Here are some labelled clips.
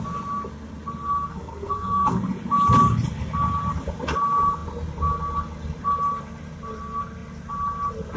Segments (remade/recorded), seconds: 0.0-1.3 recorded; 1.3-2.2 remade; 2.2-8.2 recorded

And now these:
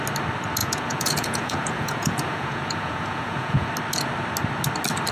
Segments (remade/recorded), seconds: 0.0-0.6 recorded; 0.6-3.7 remade; 3.7-5.1 recorded

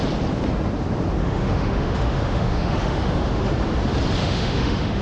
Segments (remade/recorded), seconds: 0.0-1.2 recorded; 1.2-3.5 remade; 3.5-4.2 recorded; 4.2-5.0 remade

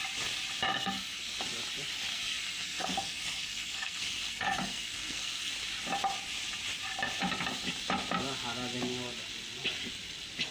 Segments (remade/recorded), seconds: 0.0-0.7 recorded; 0.7-1.4 remade; 1.4-2.1 recorded; 2.1-5.5 remade; 5.5-10.5 recorded

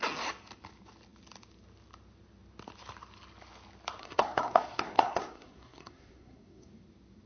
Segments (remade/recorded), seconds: 0.0-4.0 recorded; 4.0-6.7 remade; 6.7-7.3 recorded

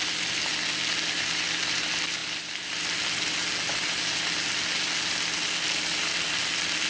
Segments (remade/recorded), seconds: 0.0-6.9 recorded